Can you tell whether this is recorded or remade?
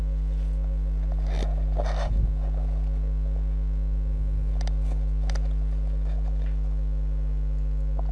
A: recorded